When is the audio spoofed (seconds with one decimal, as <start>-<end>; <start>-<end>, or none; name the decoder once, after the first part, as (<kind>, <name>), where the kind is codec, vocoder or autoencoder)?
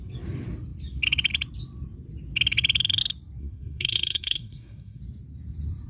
3.4-5.0 (codec, SNAC)